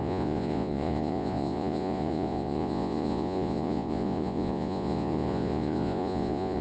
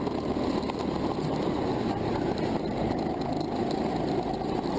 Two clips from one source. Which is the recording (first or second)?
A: second